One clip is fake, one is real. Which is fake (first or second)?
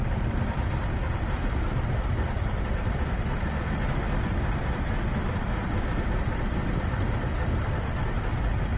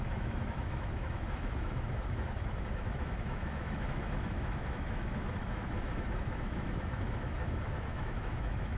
second